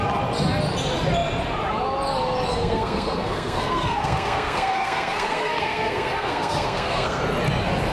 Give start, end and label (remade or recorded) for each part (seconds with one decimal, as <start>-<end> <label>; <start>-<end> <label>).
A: 0.0-2.5 recorded; 2.5-7.2 remade; 7.2-7.9 recorded